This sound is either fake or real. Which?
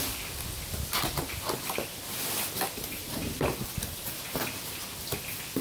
real